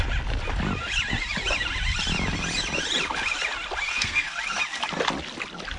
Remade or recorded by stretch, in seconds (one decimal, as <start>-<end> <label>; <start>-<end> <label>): 0.0-3.9 recorded; 3.9-4.4 remade; 4.4-5.8 recorded